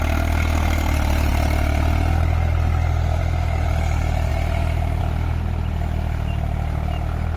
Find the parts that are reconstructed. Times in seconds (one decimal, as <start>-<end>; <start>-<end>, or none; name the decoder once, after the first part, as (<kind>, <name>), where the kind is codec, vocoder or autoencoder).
none